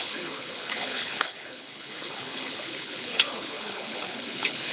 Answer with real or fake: fake